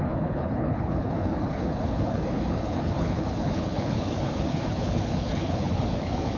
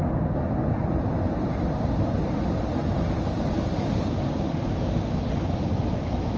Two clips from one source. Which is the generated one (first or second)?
first